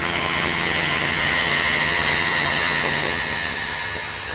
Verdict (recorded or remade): remade